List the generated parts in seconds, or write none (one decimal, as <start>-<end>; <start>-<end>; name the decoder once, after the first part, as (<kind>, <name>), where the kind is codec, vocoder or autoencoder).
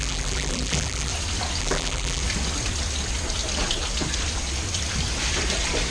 0.0-1.1 (vocoder, BigVGAN v2); 1.6-2.2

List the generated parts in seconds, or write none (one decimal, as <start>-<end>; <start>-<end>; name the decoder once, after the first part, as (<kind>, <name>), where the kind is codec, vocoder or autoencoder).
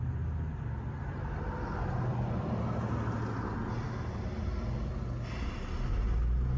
2.1-2.6 (vocoder, BigVGAN v2)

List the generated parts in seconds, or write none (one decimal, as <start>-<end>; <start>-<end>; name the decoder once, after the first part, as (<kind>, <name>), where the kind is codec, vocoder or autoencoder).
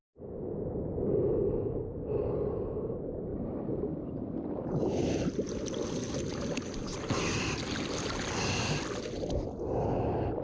1.6-2.7 (vocoder, BigVGAN v2); 3.3-6.7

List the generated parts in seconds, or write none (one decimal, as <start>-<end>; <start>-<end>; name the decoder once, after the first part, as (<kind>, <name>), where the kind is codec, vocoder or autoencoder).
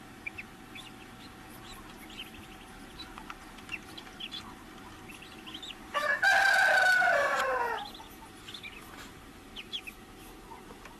none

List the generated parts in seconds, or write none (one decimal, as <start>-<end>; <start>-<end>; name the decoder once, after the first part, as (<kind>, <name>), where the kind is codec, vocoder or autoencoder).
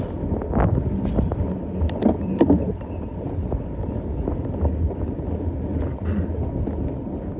none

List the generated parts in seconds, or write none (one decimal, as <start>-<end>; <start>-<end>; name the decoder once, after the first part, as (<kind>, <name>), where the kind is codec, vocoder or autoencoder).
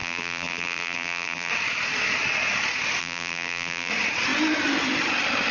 0.0-1.5 (vocoder, BigVGAN v2); 3.0-3.9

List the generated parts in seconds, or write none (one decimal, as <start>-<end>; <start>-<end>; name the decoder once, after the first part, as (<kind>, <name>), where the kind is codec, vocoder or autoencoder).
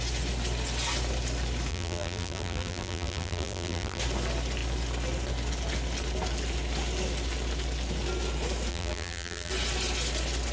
1.7-4.0 (vocoder, BigVGAN v2); 8.7-9.5